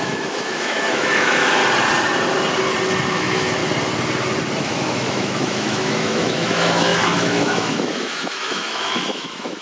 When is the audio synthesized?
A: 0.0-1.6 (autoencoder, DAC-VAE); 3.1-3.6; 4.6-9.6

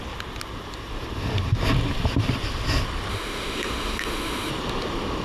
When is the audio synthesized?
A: 3.1-4.5 (autoencoder, DAC-VAE)